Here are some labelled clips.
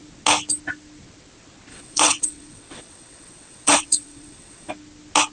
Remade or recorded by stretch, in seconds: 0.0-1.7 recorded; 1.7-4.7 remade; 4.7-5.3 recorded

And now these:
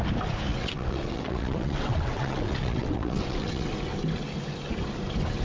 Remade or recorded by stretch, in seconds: 0.0-0.5 recorded; 0.5-3.7 remade; 3.7-5.4 recorded